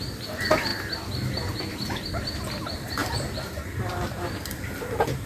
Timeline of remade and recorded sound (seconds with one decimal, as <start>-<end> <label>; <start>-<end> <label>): 0.0-0.7 remade; 0.7-2.6 recorded; 2.6-5.3 remade